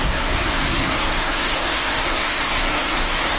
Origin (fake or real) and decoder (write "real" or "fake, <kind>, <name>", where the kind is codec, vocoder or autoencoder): fake, codec, SNAC